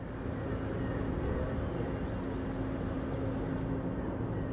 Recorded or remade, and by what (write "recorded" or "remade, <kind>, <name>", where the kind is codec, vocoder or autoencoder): recorded